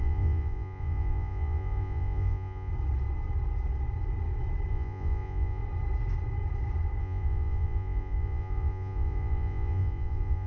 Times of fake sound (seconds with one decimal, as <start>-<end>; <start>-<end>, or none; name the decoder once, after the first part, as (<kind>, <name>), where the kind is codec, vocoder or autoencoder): 0.0-2.7 (vocoder, Vocos); 4.7-5.6; 7.0-10.5